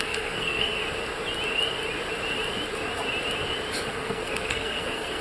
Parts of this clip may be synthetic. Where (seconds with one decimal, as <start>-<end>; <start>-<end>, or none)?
0.0-0.8; 3.9-5.2